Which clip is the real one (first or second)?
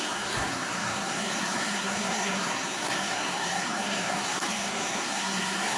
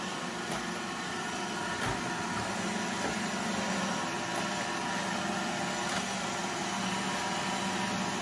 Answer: second